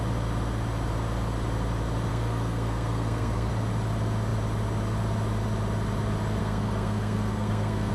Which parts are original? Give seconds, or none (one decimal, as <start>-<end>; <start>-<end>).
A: 0.0-2.1; 3.5-6.4